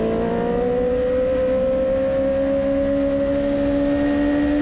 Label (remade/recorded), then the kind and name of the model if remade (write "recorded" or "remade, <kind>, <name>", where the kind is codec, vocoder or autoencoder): recorded